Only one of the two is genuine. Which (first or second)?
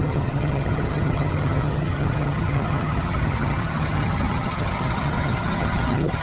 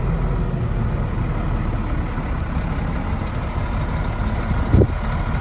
second